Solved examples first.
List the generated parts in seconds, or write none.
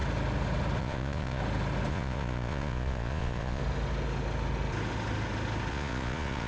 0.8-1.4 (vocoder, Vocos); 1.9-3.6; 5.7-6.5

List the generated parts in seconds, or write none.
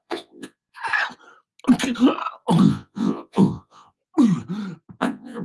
0.0-0.8 (vocoder, Vocos); 2.6-4.0; 5.0-5.4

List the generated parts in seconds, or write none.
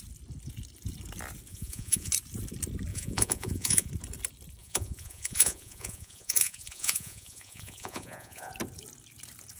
1.5-2.1 (vocoder, Vocos); 2.9-3.9; 4.6-8.5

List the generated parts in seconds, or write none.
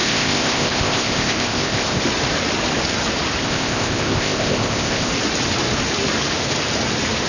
0.0-2.0 (codec, ZipCodec); 3.4-5.1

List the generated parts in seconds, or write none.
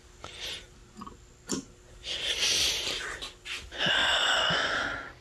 4.0-4.8 (vocoder, Vocos)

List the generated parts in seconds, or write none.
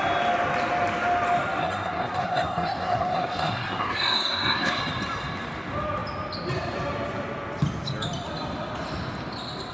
1.6-4.8 (codec, SNAC)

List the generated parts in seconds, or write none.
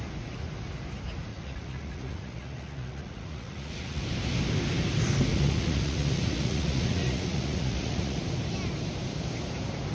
1.3-4.0 (vocoder, Vocos); 5.3-8.2